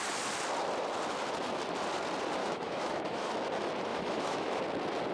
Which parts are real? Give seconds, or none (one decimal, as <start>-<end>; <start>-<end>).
0.0-2.4; 3.3-3.9; 4.6-5.1